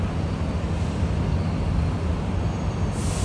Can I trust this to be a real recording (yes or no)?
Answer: yes